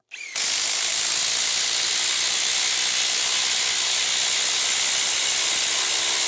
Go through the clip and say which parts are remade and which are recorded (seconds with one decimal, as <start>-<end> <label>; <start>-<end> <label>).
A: 0.0-6.3 recorded